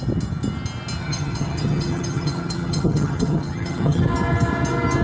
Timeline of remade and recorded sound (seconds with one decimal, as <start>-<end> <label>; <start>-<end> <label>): 0.0-1.0 recorded; 1.0-4.0 remade; 4.0-5.0 recorded